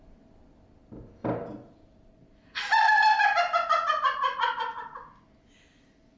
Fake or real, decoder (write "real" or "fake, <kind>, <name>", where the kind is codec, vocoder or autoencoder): real